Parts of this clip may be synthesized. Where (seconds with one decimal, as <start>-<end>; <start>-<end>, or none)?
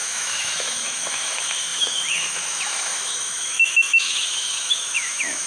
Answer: 0.0-5.5